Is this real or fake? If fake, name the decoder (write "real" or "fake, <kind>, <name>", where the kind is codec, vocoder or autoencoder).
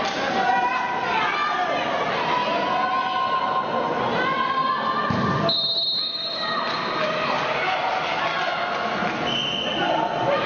real